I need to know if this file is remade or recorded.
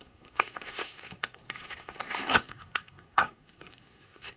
remade